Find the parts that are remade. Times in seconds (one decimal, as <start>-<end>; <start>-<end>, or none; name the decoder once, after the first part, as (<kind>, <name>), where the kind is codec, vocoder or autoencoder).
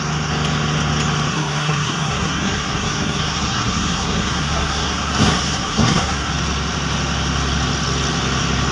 1.3-6.3 (codec, SNAC)